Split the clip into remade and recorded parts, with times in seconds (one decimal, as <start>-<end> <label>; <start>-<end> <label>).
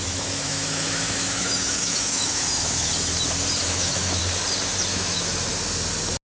0.0-2.9 remade; 2.9-3.6 recorded; 3.6-4.2 remade; 4.2-4.9 recorded; 4.9-5.5 remade; 5.5-6.4 recorded